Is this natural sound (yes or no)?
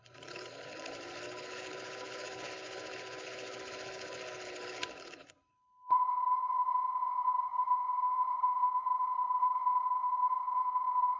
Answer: no